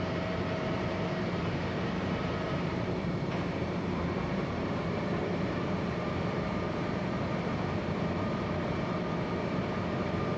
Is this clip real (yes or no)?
no